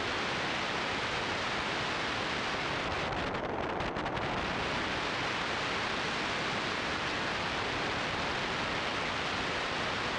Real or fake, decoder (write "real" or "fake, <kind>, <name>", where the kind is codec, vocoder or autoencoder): real